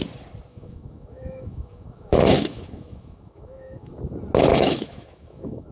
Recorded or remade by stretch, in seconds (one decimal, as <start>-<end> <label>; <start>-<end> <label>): 0.0-0.5 recorded; 0.5-3.9 remade; 3.9-4.5 recorded; 4.5-5.7 remade

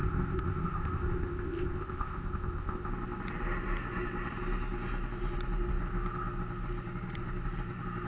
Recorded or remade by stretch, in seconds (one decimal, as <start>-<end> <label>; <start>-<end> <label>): 0.0-2.9 remade; 2.9-8.1 recorded

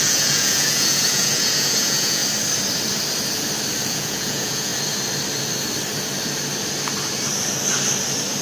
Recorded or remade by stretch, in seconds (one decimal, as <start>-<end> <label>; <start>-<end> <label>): 0.0-2.2 remade; 2.2-3.9 recorded; 3.9-4.7 remade; 4.7-8.4 recorded

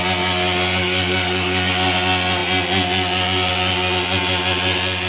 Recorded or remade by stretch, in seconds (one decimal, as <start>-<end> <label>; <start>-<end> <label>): 0.0-0.8 recorded; 0.8-1.7 remade; 1.7-5.1 recorded

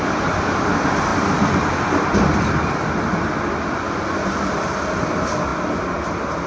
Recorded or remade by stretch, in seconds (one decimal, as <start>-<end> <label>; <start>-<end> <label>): 0.0-6.5 recorded

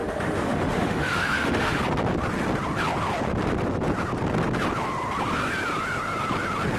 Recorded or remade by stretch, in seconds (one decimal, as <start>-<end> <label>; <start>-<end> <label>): 0.0-1.8 remade; 1.8-6.8 recorded

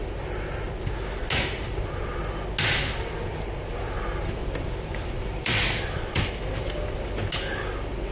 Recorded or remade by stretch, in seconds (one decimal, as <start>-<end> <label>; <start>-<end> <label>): 0.0-4.4 recorded; 4.4-6.3 remade; 6.3-8.1 recorded

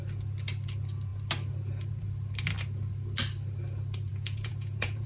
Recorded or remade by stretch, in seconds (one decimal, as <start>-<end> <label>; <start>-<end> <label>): 0.0-4.1 recorded; 4.1-5.1 remade